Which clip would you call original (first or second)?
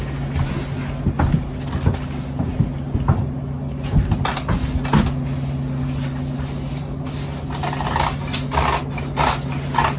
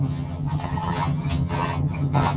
first